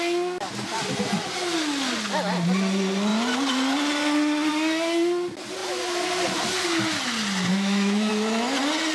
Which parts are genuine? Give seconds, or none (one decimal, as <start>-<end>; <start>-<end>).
0.0-7.5; 8.1-8.9